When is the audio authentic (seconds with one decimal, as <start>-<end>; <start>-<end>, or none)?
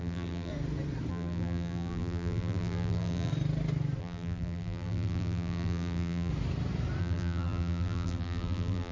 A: 0.5-1.1; 3.3-4.0; 6.3-7.0